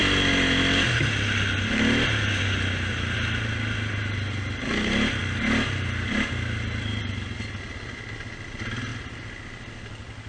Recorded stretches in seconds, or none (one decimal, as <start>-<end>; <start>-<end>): 0.0-10.3